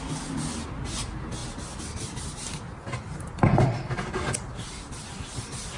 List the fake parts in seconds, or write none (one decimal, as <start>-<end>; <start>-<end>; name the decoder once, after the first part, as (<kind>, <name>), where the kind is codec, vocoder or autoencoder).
none